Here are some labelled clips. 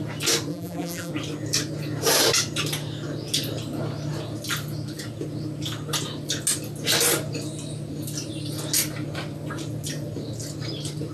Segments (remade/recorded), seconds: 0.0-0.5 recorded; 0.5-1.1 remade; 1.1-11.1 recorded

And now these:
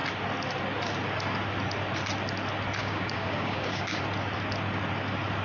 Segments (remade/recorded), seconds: 0.0-2.8 recorded; 2.8-4.0 remade; 4.0-5.4 recorded

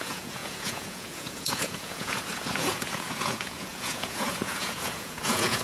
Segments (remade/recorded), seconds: 0.0-5.6 remade

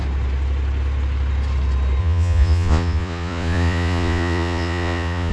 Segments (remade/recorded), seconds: 0.0-2.0 recorded; 2.0-5.3 remade

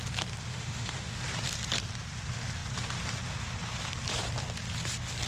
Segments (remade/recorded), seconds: 0.0-0.5 recorded; 0.5-1.2 remade; 1.2-5.3 recorded

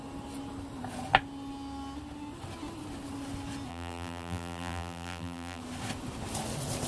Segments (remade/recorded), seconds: 0.0-3.7 recorded; 3.7-5.6 remade; 5.6-6.9 recorded

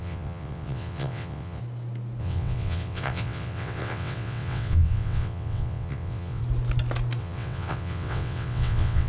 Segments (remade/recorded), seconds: 0.0-1.6 remade; 1.6-2.2 recorded; 2.2-6.4 remade; 6.4-7.2 recorded; 7.2-9.1 remade

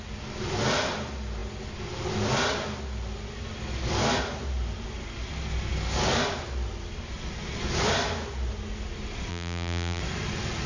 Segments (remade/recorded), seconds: 0.0-9.3 recorded; 9.3-10.0 remade; 10.0-10.7 recorded